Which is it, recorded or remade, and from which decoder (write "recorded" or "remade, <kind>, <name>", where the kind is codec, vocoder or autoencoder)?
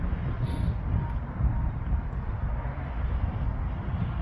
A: recorded